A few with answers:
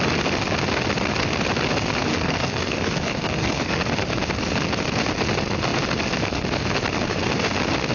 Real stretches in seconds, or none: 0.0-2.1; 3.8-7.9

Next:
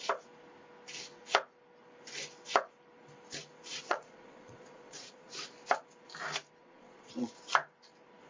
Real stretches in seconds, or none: 0.0-3.7; 5.3-6.6; 7.3-8.3